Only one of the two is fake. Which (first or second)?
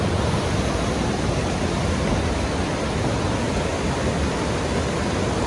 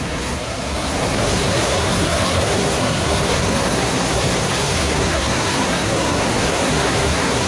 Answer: second